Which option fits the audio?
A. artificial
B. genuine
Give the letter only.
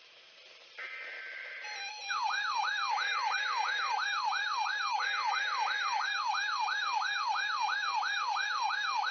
A